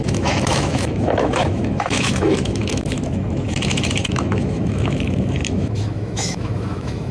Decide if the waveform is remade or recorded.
remade